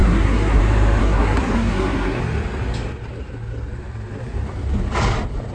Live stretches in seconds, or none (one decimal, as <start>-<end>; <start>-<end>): 0.6-1.0; 2.2-5.5